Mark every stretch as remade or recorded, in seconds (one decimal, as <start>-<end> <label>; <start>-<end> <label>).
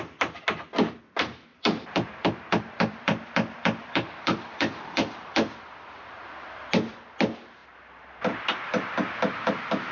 0.0-1.5 recorded; 1.5-6.7 remade; 6.7-7.6 recorded; 7.6-9.9 remade